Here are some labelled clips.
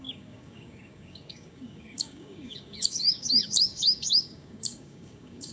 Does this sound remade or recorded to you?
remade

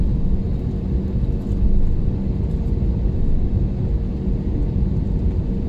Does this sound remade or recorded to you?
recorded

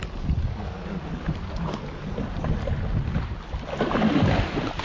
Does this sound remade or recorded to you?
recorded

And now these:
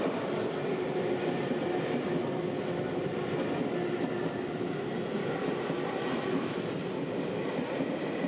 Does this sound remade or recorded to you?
recorded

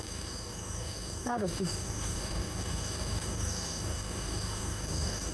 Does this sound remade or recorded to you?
remade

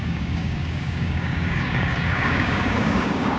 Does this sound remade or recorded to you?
remade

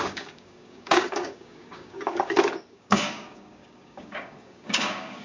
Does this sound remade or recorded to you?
remade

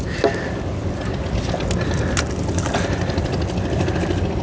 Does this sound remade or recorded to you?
recorded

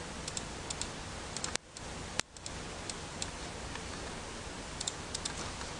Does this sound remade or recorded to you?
recorded